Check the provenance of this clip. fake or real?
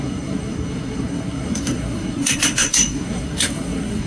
fake